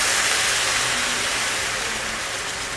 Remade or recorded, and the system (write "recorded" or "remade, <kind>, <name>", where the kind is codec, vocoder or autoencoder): recorded